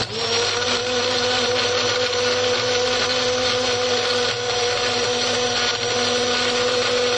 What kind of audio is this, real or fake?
real